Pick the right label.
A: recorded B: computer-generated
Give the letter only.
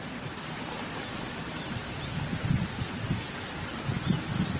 B